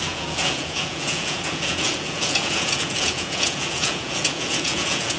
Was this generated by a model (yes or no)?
yes